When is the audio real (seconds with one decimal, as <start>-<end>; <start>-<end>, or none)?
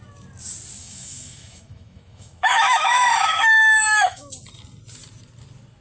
0.0-0.8; 4.3-5.8